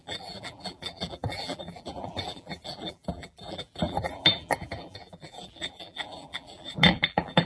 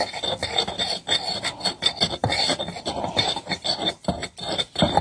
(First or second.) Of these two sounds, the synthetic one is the first